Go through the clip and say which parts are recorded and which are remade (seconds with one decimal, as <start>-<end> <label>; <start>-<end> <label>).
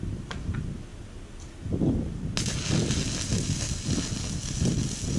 0.0-5.2 recorded